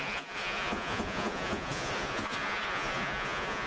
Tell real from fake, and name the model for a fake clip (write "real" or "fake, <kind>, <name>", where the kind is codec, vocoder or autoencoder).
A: fake, vocoder, Vocos